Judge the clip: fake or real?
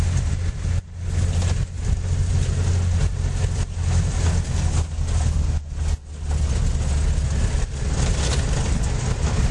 real